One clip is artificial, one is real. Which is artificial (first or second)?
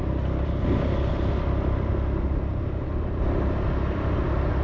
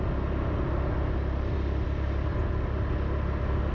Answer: first